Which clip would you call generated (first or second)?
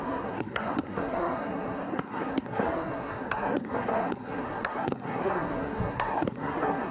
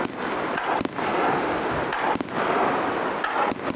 first